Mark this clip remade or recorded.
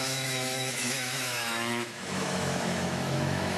remade